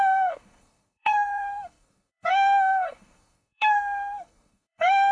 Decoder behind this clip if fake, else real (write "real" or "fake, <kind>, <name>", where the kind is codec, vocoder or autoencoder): fake, codec, SNAC